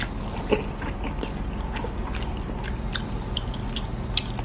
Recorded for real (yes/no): yes